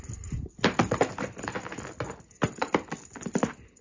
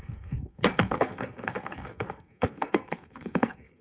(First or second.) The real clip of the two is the first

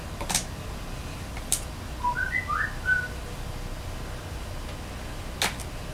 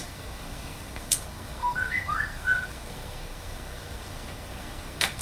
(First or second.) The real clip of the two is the first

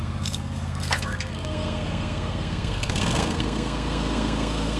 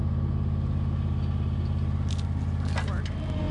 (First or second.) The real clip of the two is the second